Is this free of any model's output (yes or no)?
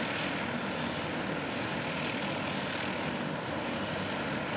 yes